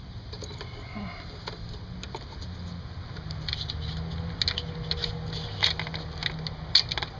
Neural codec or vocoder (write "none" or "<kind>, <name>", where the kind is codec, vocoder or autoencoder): none